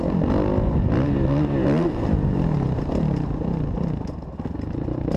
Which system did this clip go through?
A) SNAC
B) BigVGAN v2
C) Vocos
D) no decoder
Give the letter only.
D